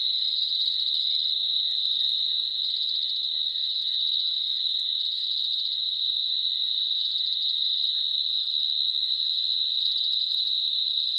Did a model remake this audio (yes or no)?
no